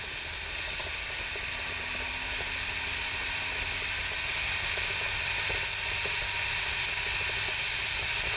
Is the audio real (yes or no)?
yes